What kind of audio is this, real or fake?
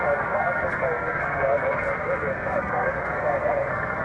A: fake